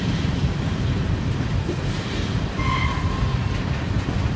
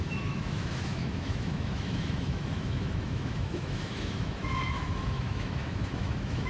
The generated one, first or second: second